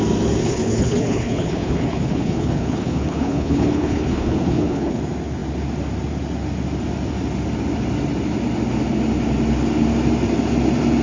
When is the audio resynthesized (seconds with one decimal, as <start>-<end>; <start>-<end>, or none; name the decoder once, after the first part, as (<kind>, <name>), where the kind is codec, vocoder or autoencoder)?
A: 0.4-5.0 (codec, HILCodec)